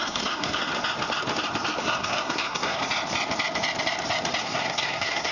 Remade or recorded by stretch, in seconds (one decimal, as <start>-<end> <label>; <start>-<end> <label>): 0.0-0.6 remade; 0.6-1.8 recorded; 1.8-2.8 remade; 2.8-4.4 recorded; 4.4-5.3 remade